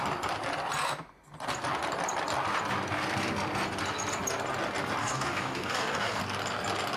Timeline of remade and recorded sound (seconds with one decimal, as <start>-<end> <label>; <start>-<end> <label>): 0.0-5.0 recorded; 5.0-6.2 remade; 6.2-7.0 recorded